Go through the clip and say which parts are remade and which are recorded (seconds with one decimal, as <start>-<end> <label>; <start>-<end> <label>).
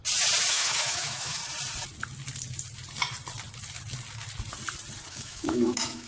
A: 0.0-0.5 recorded; 0.5-1.4 remade; 1.4-5.1 recorded; 5.1-6.1 remade